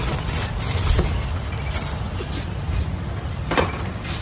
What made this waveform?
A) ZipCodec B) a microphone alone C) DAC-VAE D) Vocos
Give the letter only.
B